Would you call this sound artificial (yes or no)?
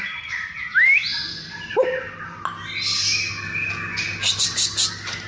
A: no